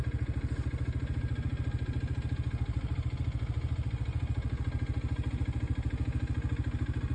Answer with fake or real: real